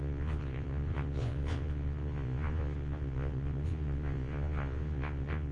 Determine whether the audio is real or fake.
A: fake